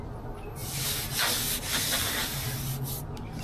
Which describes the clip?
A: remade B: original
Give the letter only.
B